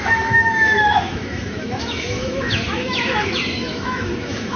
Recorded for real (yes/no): no